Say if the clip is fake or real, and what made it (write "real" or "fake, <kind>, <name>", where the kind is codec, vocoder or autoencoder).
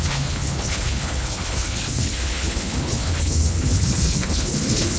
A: fake, codec, HILCodec